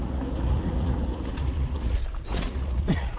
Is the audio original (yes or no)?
no